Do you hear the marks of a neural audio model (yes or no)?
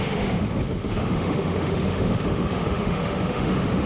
yes